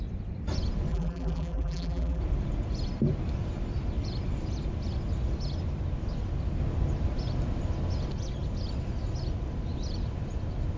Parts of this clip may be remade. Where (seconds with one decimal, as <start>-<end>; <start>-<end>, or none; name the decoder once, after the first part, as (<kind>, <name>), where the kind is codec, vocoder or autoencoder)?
0.9-2.2 (vocoder, BigVGAN v2)